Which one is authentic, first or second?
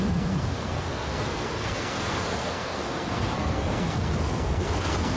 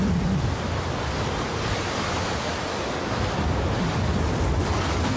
second